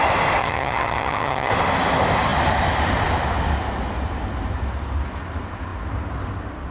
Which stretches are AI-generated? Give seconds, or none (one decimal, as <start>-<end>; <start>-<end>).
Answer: 0.4-1.5